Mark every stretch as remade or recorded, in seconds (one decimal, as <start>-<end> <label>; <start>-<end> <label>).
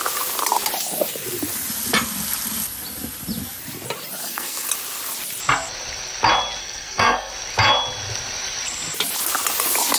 0.0-4.2 recorded; 4.2-4.7 remade; 4.7-6.6 recorded; 6.6-7.3 remade; 7.3-10.0 recorded